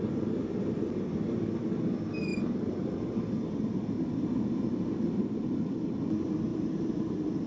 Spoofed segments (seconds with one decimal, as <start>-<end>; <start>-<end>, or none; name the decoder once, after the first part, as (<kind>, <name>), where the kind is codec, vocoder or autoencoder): 2.3-3.1 (vocoder, BigVGAN v2); 6.5-7.5